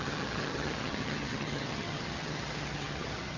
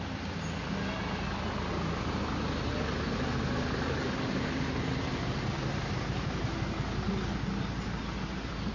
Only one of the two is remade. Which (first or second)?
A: first